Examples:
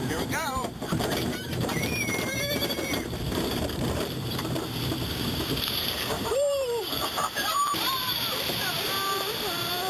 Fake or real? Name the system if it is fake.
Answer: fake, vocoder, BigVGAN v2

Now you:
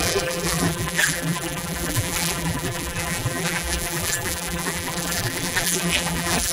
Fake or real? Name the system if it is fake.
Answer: fake, vocoder, BigVGAN v2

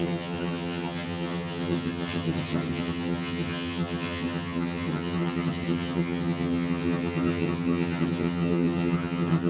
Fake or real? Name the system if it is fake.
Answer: fake, vocoder, HiFi-GAN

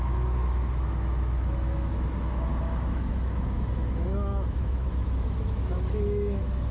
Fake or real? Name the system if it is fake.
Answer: fake, autoencoder, DAC-VAE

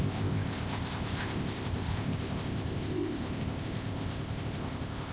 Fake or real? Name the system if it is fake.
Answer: fake, codec, ZipCodec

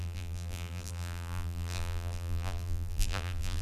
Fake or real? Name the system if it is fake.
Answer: fake, vocoder, BigVGAN v2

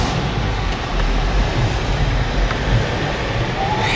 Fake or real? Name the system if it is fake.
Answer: real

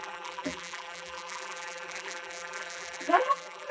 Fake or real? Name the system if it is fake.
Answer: fake, vocoder, BigVGAN v2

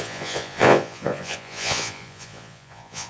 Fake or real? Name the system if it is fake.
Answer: fake, vocoder, Vocos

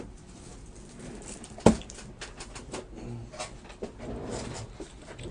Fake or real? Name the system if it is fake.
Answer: real